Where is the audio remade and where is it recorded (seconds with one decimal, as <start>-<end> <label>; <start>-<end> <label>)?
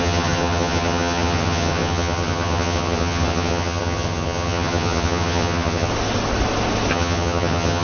0.0-5.9 remade; 5.9-6.9 recorded; 6.9-7.8 remade